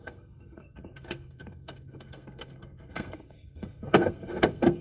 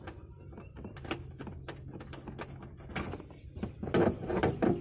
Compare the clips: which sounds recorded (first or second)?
second